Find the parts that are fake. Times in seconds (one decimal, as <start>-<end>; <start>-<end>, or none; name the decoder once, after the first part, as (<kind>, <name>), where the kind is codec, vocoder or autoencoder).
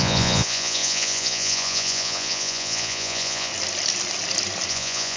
0.0-3.5 (vocoder, Vocos); 4.7-5.2